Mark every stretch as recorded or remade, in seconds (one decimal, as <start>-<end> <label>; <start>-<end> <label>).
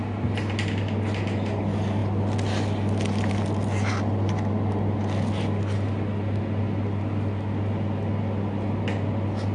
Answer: 0.0-9.5 recorded